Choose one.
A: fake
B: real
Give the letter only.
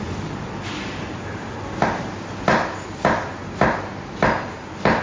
B